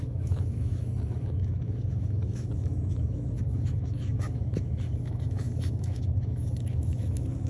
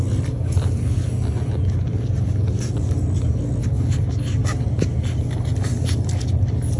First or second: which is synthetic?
first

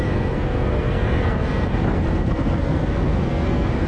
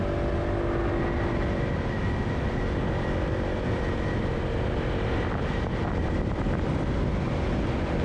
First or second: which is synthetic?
first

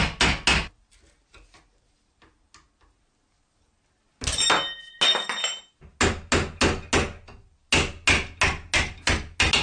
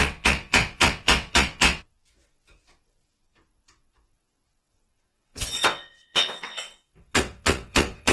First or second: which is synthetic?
second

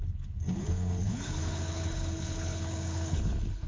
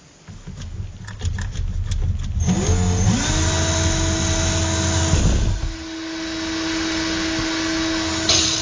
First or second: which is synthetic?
first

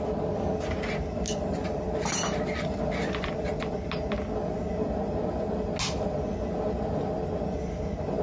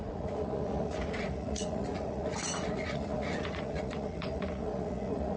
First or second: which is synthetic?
second